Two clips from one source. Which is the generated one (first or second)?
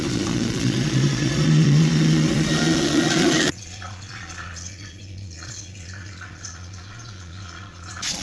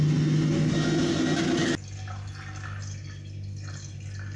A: first